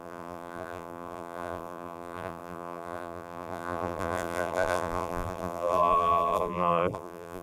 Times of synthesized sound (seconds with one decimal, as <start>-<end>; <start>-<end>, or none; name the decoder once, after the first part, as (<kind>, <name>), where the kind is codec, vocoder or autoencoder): 0.0-7.4 (vocoder, BigVGAN v2)

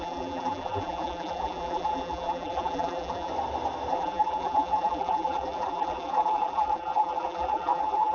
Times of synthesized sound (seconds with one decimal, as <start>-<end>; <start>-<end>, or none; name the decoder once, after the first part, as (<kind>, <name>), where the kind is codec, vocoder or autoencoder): 0.0-3.3 (vocoder, BigVGAN v2); 3.9-8.1

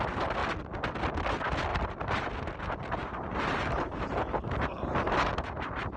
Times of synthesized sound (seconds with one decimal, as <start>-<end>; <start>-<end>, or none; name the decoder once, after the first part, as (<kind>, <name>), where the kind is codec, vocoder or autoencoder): 1.7-5.3 (vocoder, BigVGAN v2)

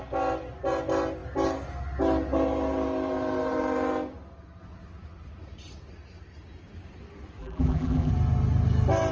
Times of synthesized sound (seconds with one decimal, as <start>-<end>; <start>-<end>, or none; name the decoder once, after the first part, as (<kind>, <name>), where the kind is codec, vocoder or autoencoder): 7.4-8.1 (vocoder, BigVGAN v2)